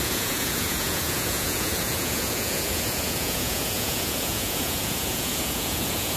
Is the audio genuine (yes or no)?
no